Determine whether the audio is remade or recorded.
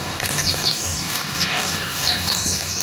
remade